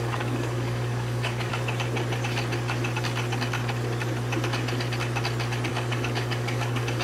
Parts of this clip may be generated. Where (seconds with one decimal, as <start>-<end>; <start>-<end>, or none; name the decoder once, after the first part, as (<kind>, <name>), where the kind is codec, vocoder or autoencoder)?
0.0-1.5 (codec, DAC); 5.7-7.0